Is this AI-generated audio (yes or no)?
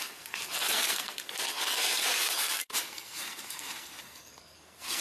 yes